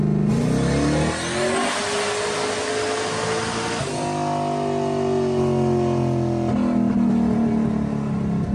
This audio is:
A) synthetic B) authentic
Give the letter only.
B